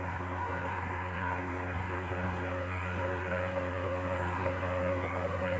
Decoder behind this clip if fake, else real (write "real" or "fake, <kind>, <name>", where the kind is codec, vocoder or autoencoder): fake, codec, SNAC